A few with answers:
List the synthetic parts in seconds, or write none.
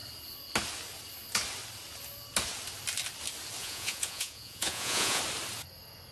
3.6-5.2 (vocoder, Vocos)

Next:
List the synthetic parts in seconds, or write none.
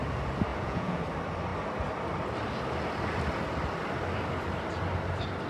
0.5-1.0 (vocoder, Vocos)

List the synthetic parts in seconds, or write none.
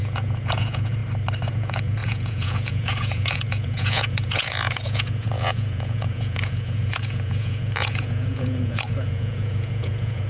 0.0-1.0 (vocoder, Vocos); 1.5-10.3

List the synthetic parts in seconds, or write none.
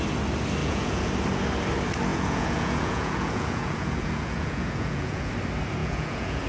0.6-1.1 (vocoder, Vocos); 2.1-5.3; 5.8-6.5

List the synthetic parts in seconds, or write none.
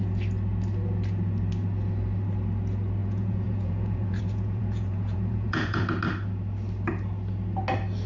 3.0-5.8 (vocoder, Vocos)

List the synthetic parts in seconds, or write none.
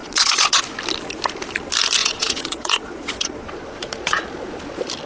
0.0-0.6 (vocoder, Vocos); 2.0-4.2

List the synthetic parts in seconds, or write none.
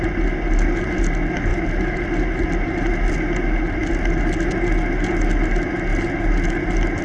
none